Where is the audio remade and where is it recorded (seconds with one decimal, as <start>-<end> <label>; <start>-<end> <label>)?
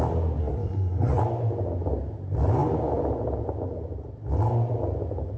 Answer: 0.0-0.4 recorded; 0.4-1.2 remade; 1.2-5.4 recorded